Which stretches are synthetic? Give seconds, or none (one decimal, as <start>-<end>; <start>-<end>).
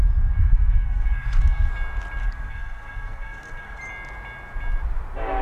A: 0.4-1.7; 2.2-3.8